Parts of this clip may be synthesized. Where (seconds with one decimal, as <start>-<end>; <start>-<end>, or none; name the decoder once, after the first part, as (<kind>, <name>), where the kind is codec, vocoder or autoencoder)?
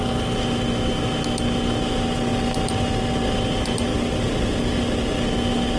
none